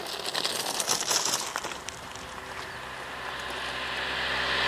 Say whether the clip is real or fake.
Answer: real